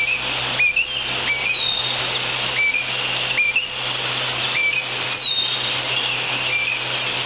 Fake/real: real